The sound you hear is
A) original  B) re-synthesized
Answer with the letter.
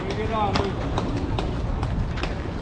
A